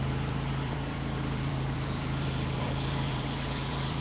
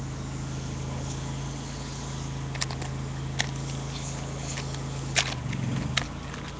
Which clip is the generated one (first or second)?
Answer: first